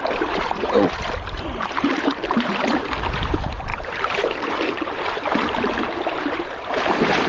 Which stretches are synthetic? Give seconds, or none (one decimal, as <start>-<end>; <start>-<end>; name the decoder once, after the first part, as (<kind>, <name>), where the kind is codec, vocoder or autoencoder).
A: 0.0-7.3 (vocoder, BigVGAN v2)